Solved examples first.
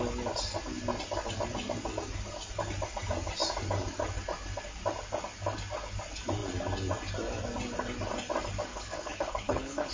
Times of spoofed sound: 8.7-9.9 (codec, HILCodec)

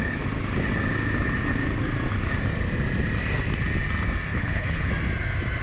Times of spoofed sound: 4.3-4.9 (codec, HILCodec)

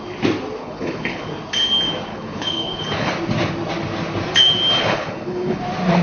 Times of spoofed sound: 0.6-1.3 (codec, HILCodec); 2.1-3.1; 4.8-5.6

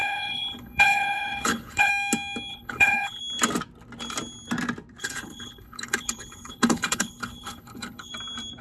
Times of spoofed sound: 0.0-1.9 (codec, HILCodec); 2.5-3.2; 5.0-8.1

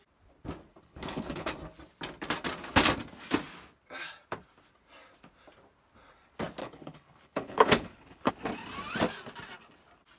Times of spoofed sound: 0.7-1.5 (codec, HILCodec); 6.6-8.3

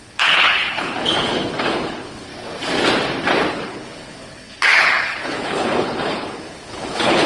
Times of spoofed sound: 0.0-2.3 (codec, HILCodec); 3.5-7.3